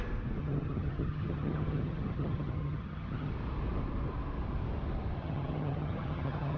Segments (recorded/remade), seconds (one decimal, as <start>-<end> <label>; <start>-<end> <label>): 0.0-0.4 recorded; 0.4-3.3 remade; 3.3-5.2 recorded; 5.2-6.6 remade